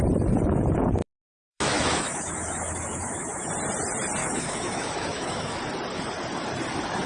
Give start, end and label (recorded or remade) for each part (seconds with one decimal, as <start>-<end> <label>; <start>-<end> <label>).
0.0-1.0 recorded; 1.0-3.5 remade; 3.5-4.2 recorded; 4.2-5.6 remade; 5.6-7.1 recorded